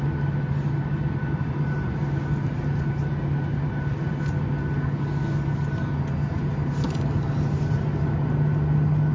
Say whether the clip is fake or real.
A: real